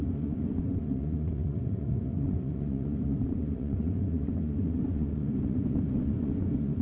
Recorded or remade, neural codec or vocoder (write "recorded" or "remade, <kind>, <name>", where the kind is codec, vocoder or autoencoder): remade, vocoder, Vocos